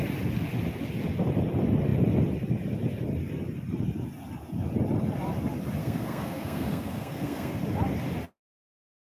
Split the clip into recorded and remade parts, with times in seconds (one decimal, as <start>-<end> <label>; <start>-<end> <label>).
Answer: 0.0-5.8 recorded; 5.8-7.6 remade; 7.6-9.1 recorded